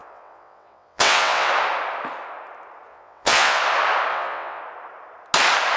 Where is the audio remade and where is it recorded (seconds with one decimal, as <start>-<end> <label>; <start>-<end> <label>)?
0.0-1.5 remade; 1.5-2.9 recorded; 2.9-3.6 remade; 3.6-4.1 recorded; 4.1-4.6 remade; 4.6-5.8 recorded